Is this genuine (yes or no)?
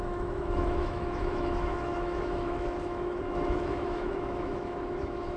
no